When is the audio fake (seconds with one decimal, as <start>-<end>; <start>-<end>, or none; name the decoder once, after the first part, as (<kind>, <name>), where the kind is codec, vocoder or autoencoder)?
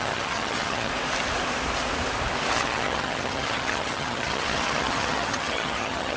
0.0-0.9 (vocoder, HiFi-GAN); 2.5-6.2